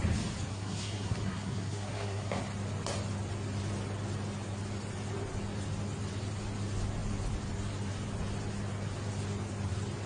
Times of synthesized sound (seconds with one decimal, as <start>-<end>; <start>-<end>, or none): 0.5-2.4